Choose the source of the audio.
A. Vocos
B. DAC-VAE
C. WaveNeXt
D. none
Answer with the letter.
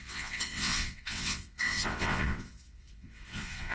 C